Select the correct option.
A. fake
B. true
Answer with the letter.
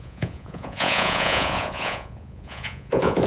A